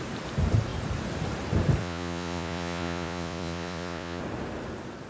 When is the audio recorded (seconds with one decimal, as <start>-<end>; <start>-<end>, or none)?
0.0-1.8; 4.2-5.1